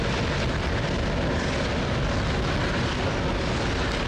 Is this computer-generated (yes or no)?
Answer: no